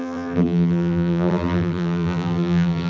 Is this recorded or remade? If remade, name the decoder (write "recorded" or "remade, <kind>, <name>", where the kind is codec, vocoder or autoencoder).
remade, vocoder, BigVGAN v2